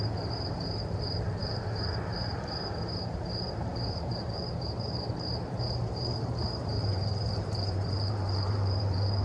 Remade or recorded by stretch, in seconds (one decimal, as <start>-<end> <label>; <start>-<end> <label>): 0.0-9.2 remade